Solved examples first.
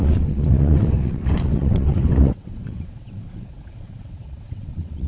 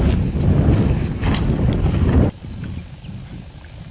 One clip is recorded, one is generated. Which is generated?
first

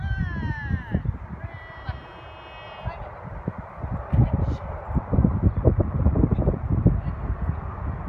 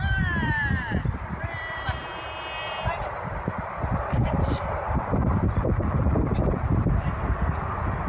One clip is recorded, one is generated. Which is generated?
second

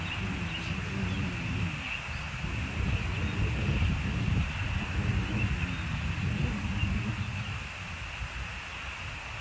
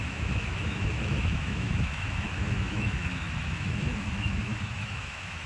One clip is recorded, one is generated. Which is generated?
second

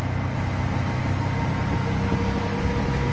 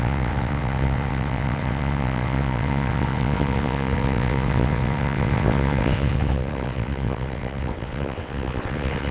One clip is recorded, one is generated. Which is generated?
second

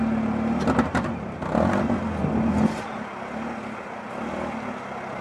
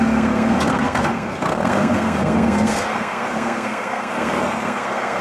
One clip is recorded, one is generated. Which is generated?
second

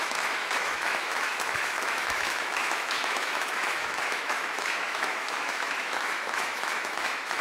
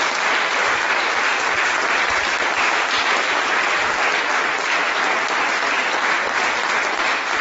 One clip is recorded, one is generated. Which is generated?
first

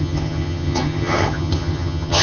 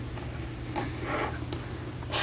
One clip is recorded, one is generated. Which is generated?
first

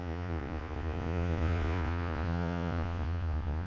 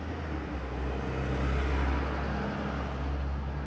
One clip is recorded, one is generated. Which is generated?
first